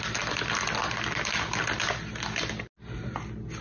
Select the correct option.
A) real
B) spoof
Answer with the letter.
A